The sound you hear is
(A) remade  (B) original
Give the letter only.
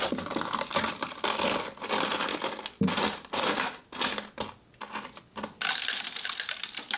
B